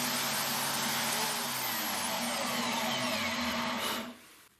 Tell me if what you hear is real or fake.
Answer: real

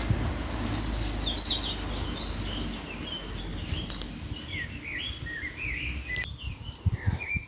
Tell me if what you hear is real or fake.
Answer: real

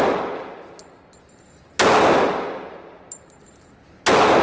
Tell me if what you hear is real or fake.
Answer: real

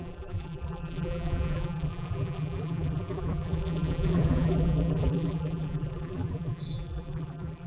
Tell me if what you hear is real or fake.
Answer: fake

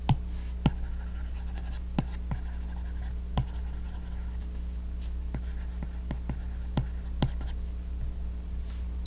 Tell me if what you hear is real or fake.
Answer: real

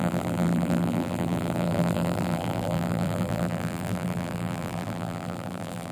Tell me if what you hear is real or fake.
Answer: fake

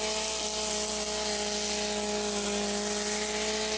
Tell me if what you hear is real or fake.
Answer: real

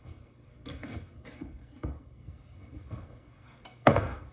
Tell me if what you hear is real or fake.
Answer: fake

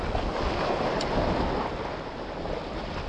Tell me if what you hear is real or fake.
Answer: real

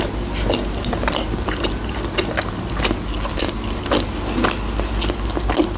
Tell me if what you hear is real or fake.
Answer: real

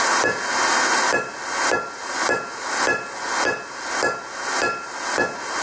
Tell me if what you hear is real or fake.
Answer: real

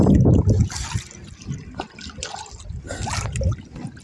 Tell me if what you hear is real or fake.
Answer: real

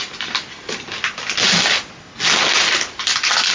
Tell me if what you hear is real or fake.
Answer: real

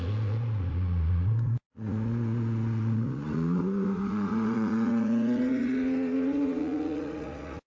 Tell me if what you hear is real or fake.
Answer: fake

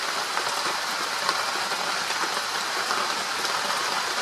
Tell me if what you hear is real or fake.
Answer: real